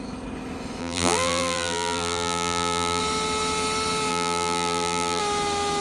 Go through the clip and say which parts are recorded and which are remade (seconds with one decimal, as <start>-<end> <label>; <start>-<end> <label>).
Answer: 0.0-0.8 recorded; 0.8-3.0 remade; 3.0-4.1 recorded; 4.1-5.2 remade; 5.2-5.8 recorded